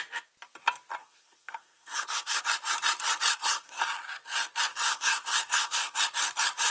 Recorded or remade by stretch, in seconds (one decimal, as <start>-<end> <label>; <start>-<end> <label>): 0.0-1.0 recorded; 1.0-2.4 remade; 2.4-3.3 recorded; 3.3-3.8 remade; 3.8-4.7 recorded; 4.7-6.0 remade; 6.0-6.7 recorded